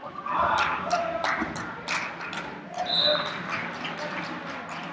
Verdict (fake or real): real